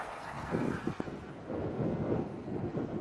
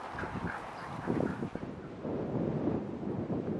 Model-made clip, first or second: first